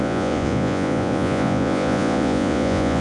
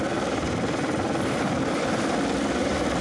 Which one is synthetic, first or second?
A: first